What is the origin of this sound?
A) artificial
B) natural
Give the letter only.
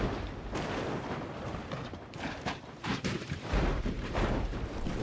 A